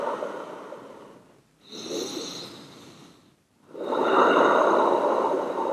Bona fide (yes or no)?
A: yes